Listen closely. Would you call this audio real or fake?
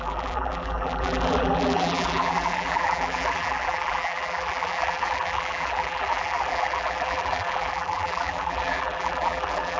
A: fake